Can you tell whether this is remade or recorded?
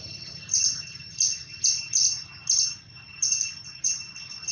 recorded